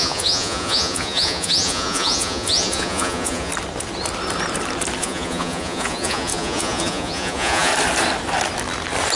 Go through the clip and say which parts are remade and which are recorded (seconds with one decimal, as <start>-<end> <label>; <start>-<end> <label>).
0.0-3.5 remade; 3.5-5.0 recorded; 5.0-7.7 remade; 7.7-9.2 recorded